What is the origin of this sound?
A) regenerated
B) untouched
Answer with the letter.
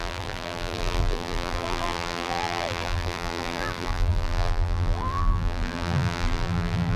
A